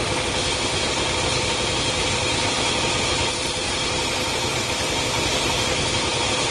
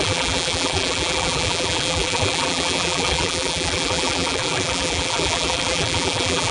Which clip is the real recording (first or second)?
first